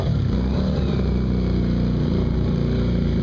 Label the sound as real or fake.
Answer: real